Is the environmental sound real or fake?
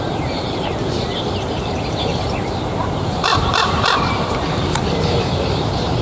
fake